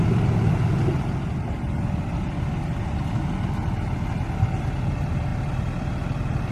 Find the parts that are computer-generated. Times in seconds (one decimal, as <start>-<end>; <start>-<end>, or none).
none

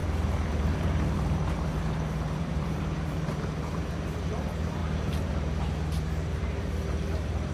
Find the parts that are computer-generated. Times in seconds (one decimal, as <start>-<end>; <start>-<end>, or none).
0.0-7.5

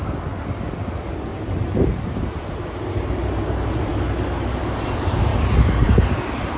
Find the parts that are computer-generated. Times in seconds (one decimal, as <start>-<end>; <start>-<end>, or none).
1.3-3.3

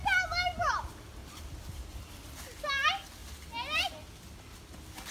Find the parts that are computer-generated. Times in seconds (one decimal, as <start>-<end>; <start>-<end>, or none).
1.2-2.2

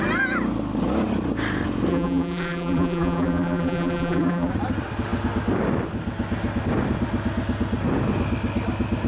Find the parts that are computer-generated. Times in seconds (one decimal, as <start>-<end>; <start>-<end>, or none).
1.9-4.5